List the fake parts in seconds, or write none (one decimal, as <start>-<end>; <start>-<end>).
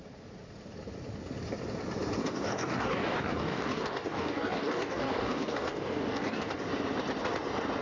2.2-6.5